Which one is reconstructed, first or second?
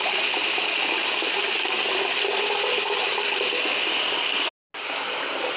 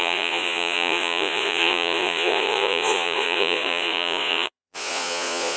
second